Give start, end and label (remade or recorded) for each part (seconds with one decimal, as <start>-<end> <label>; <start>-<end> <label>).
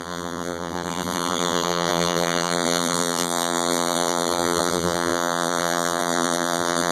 0.0-6.9 remade